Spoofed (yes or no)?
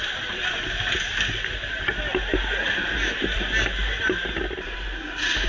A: no